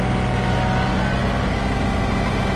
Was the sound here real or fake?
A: real